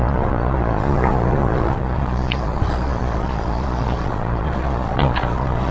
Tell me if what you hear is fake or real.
fake